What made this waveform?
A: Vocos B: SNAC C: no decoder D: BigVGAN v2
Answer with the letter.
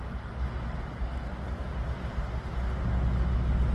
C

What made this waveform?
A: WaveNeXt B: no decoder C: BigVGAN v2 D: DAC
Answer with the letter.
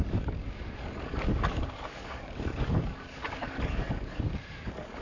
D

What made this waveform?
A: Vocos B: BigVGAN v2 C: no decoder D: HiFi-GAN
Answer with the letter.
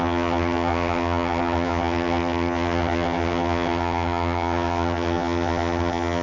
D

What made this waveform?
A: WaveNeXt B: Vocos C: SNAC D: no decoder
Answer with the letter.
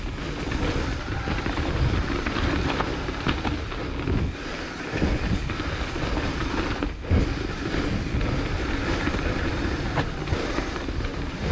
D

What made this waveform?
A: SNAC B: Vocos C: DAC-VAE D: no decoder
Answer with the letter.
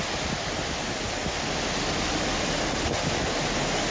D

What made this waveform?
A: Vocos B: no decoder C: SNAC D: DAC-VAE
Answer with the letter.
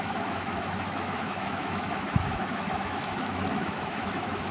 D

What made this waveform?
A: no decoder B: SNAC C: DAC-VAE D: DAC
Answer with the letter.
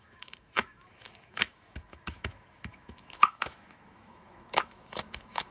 C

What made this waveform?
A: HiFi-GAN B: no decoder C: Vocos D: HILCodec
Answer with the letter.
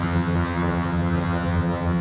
A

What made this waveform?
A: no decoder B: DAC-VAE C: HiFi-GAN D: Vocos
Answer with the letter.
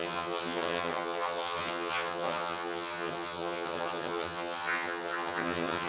C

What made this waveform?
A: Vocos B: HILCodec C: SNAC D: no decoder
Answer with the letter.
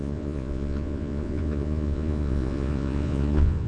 A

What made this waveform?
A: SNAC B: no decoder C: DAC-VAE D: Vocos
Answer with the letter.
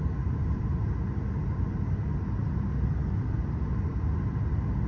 B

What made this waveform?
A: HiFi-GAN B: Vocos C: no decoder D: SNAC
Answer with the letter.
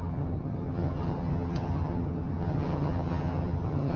A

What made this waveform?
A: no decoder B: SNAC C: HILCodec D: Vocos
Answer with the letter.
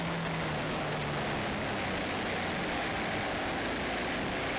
A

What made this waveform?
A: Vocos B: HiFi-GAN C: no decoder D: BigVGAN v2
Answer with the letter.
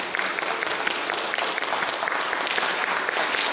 C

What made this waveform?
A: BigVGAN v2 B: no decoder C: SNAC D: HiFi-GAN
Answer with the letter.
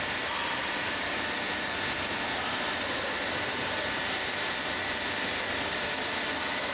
B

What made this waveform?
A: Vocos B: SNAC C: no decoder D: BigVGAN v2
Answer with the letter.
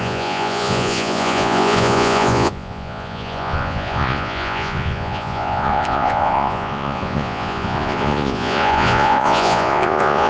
A